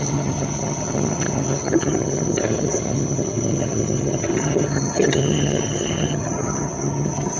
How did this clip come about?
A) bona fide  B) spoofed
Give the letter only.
B